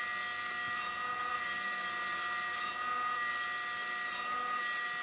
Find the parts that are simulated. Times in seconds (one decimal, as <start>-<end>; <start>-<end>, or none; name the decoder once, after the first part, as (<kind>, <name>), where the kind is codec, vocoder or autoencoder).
1.3-2.7 (vocoder, BigVGAN v2)